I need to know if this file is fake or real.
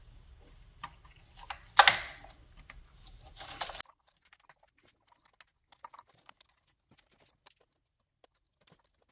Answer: real